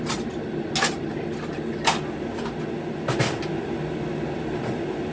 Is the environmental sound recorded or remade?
recorded